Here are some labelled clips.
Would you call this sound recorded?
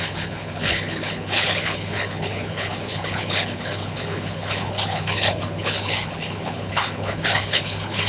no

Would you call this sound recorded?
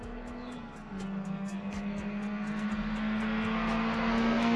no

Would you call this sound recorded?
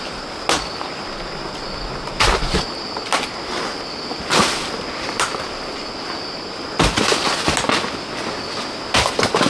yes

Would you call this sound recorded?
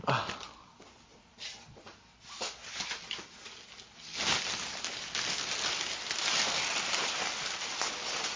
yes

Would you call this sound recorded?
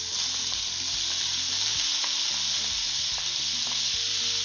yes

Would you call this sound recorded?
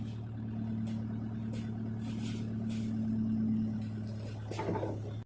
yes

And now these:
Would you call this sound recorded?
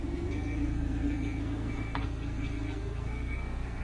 no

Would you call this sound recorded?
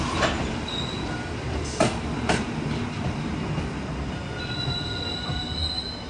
yes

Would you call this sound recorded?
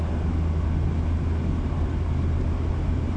yes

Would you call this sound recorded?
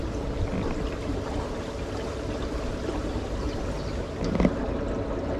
yes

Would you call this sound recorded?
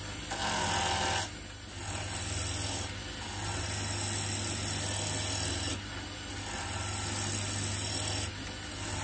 yes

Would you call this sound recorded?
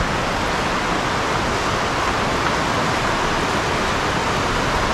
yes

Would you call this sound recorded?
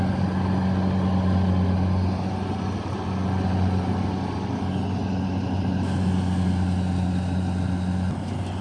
yes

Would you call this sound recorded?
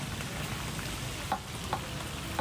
yes